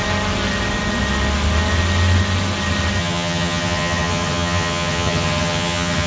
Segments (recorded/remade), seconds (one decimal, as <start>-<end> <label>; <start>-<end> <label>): 0.0-3.0 recorded; 3.0-6.1 remade